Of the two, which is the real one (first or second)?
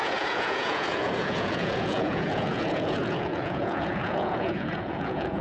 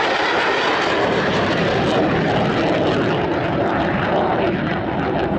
second